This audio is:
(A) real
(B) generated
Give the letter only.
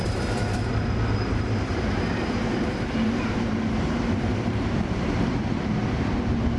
B